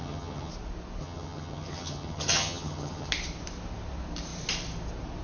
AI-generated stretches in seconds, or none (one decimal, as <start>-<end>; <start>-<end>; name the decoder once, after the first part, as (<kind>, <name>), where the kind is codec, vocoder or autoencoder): 0.0-0.5 (vocoder, HiFi-GAN); 1.0-3.1